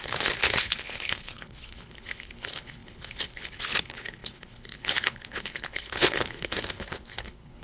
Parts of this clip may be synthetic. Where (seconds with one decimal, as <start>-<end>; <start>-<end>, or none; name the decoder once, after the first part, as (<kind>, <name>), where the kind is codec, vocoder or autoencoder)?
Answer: 0.0-7.6 (codec, HILCodec)

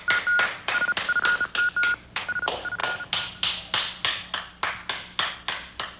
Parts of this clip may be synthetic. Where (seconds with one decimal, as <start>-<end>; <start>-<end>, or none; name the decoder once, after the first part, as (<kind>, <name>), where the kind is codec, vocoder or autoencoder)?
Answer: none

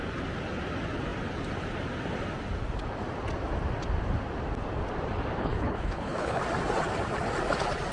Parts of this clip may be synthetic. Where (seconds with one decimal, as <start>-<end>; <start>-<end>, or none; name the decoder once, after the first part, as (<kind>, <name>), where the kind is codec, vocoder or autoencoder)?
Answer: 5.4-6.4 (codec, HILCodec)

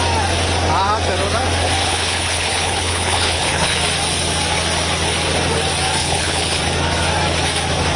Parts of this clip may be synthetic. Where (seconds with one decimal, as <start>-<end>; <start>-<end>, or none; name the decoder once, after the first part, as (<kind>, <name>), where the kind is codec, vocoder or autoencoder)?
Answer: 1.8-3.8 (codec, HILCodec); 6.0-6.6

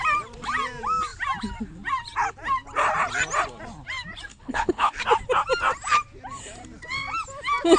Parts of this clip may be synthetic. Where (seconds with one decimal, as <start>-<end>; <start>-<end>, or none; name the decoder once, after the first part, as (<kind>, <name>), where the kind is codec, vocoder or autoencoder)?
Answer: 4.3-5.0 (codec, HILCodec)

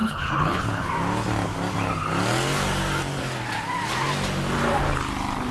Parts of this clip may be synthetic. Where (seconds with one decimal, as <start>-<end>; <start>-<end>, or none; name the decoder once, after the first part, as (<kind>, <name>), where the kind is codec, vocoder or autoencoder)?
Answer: 0.0-0.9 (codec, HILCodec)